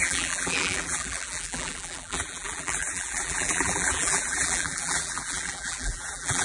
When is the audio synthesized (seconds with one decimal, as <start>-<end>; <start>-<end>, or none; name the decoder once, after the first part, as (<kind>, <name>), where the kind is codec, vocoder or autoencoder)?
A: 0.0-6.4 (vocoder, BigVGAN v2)